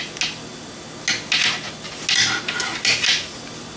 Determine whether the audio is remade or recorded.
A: recorded